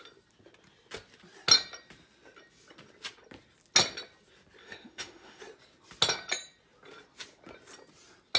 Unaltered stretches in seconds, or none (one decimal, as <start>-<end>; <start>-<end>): 0.0-4.6; 5.4-8.4